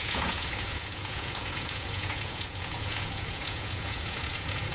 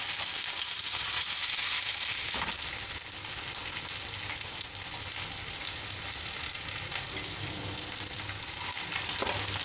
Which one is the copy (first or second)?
first